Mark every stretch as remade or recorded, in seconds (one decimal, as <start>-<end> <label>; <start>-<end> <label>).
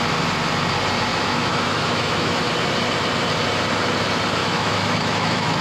0.0-1.1 recorded; 1.1-2.4 remade; 2.4-4.4 recorded; 4.4-5.6 remade